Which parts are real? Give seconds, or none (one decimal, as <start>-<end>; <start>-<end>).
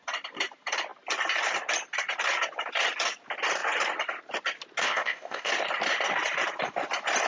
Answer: 0.0-4.8; 5.5-7.3